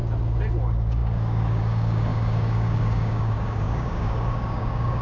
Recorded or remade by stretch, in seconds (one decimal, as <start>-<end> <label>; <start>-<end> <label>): 0.0-0.6 recorded; 0.6-5.0 remade